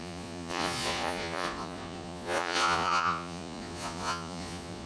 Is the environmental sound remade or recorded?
remade